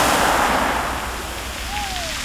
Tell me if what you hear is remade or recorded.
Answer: recorded